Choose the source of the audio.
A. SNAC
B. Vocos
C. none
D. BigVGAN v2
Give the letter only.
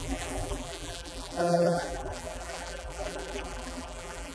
D